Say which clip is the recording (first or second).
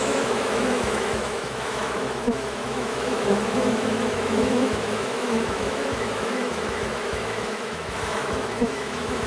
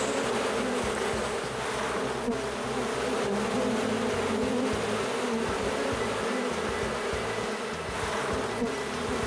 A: second